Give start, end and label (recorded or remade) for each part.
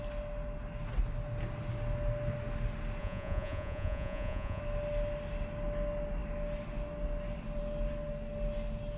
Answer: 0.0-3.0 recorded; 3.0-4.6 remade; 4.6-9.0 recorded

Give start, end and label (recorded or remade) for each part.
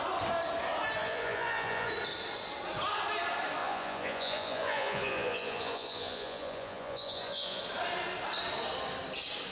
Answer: 0.0-1.0 recorded; 1.0-1.9 remade; 1.9-3.6 recorded; 3.6-7.6 remade; 7.6-9.5 recorded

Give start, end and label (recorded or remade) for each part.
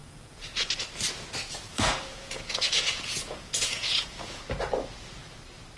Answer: 0.0-0.7 remade; 0.7-1.7 recorded; 1.7-4.4 remade; 4.4-5.8 recorded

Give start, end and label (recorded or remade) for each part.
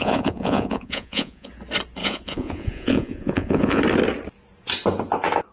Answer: 0.0-1.5 remade; 1.5-2.0 recorded; 2.0-3.8 remade; 3.8-5.5 recorded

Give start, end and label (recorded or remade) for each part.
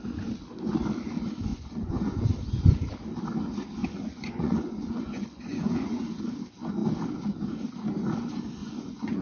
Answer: 0.0-1.5 recorded; 1.5-2.2 remade; 2.2-3.8 recorded; 3.8-6.2 remade; 6.2-8.6 recorded; 8.6-9.2 remade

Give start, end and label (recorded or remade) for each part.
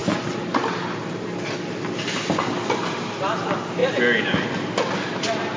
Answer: 0.0-5.6 recorded